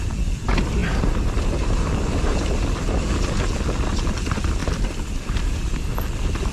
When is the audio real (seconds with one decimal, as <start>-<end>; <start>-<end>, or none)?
0.0-4.6; 5.9-6.5